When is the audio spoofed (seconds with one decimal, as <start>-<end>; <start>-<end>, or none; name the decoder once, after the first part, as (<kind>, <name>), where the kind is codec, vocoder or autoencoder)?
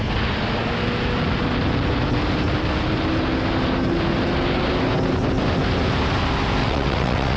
6.6-7.4 (vocoder, WaveNeXt)